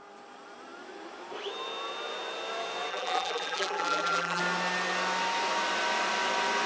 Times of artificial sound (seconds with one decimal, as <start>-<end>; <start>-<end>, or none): 2.9-4.4